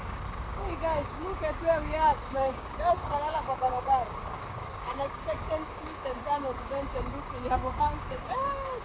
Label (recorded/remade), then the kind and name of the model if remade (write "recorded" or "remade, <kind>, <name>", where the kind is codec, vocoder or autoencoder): remade, codec, DAC